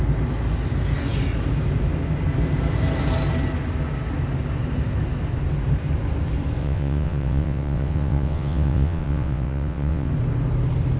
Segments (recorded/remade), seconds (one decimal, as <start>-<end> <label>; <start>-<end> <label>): 0.0-6.6 recorded; 6.6-10.1 remade; 10.1-11.0 recorded